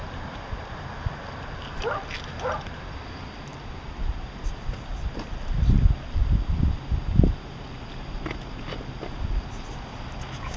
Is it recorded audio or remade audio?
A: recorded